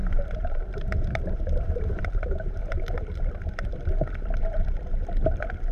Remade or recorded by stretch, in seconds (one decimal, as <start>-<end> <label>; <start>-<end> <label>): 0.0-2.6 remade; 2.6-5.7 recorded